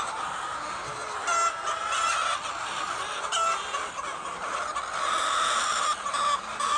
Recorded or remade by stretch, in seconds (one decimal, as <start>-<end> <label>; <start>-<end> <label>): 0.0-6.8 recorded